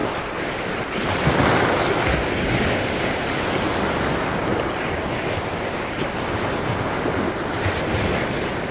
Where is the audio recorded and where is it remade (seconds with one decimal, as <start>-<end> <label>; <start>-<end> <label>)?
0.0-8.7 recorded